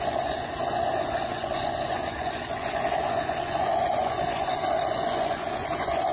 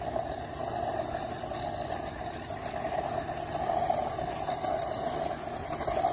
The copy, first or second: first